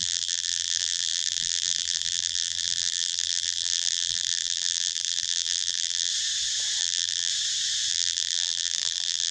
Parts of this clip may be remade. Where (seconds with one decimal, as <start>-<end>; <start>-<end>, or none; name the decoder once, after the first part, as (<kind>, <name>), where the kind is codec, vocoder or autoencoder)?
0.0-6.1 (vocoder, BigVGAN v2); 6.8-7.3; 7.9-9.3